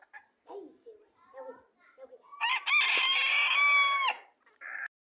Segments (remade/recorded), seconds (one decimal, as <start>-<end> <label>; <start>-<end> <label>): 0.0-5.1 recorded